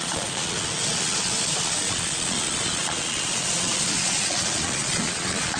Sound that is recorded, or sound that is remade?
remade